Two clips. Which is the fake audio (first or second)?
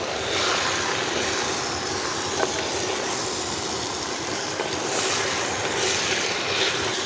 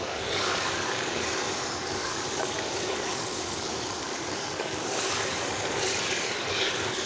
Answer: second